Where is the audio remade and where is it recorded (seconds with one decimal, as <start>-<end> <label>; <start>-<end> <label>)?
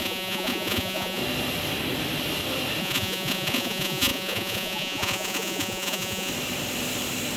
0.0-1.2 remade; 1.2-2.8 recorded; 2.8-6.3 remade; 6.3-7.4 recorded